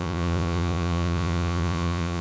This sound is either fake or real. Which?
fake